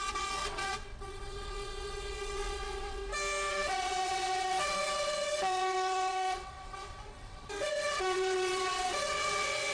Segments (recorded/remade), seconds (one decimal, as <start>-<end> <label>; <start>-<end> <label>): 0.0-3.0 remade; 3.0-3.5 recorded; 3.5-9.7 remade